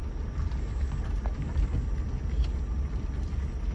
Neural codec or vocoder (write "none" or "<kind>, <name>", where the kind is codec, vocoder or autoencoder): none